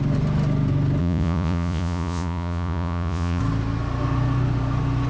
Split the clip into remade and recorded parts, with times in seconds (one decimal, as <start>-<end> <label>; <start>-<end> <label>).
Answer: 0.0-1.0 recorded; 1.0-3.4 remade; 3.4-5.1 recorded